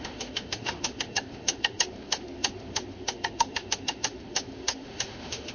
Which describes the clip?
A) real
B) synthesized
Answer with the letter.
B